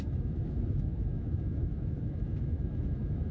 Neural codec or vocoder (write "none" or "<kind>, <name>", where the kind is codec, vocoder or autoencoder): autoencoder, DAC-VAE